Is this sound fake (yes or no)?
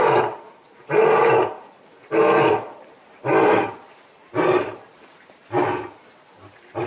no